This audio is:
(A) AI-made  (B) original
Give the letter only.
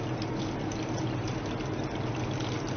B